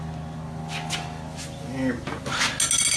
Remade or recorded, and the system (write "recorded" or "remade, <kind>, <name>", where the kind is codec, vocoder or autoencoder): recorded